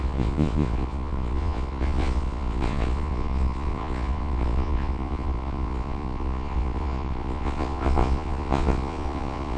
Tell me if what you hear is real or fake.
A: fake